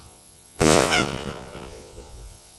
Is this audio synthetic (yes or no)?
yes